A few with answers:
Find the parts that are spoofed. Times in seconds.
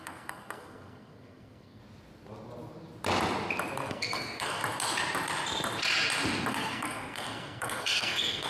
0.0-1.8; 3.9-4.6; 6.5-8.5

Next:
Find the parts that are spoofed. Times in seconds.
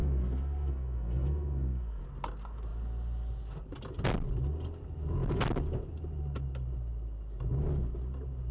0.0-2.0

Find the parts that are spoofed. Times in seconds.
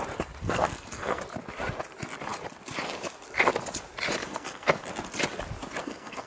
0.4-1.2; 4.2-4.8; 5.8-6.3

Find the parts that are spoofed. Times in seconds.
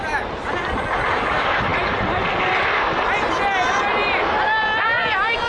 none